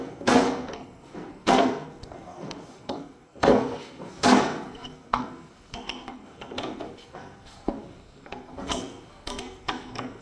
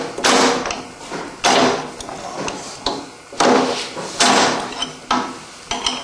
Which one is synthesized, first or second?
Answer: first